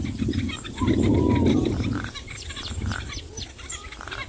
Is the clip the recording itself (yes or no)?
no